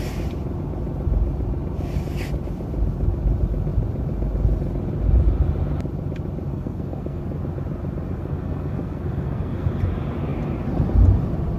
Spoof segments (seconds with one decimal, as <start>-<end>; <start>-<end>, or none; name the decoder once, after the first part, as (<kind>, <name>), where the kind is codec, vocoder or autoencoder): 6.5-7.2 (codec, SNAC); 8.2-9.7